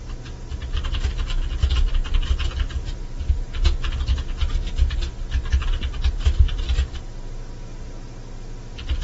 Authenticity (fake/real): real